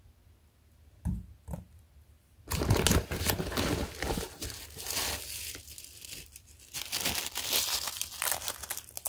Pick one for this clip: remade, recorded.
recorded